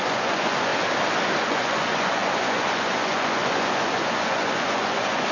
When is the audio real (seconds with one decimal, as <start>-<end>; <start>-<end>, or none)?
0.7-1.4